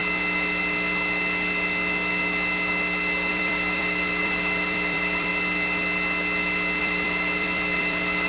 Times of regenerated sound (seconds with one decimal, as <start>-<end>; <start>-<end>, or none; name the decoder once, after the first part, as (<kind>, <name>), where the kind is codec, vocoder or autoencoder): 3.3-5.3 (vocoder, BigVGAN v2); 6.8-8.3